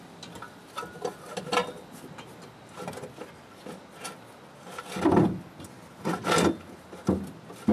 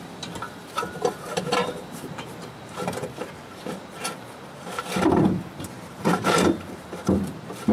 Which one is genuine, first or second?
first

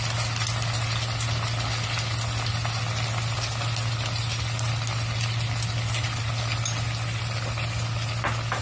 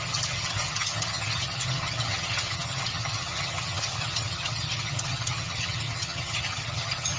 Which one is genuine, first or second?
first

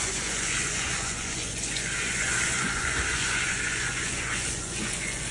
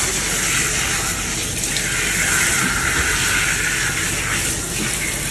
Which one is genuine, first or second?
second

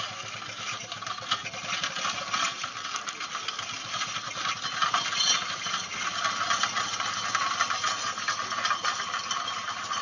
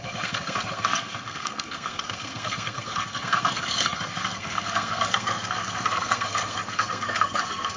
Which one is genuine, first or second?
first